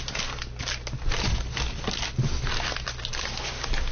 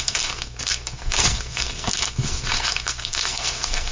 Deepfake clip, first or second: second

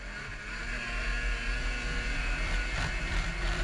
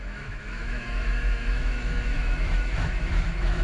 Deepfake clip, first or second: second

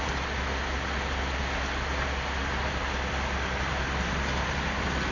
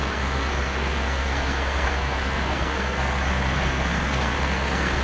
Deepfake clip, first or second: second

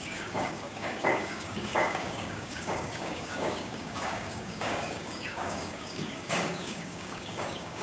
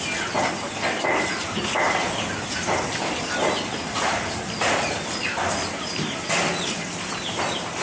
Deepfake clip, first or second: first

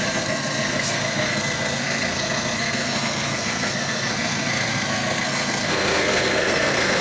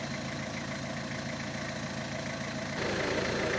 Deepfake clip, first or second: first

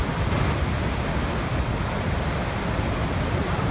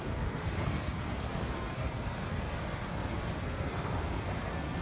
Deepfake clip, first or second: second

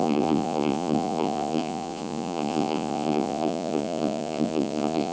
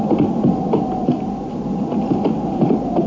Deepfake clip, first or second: first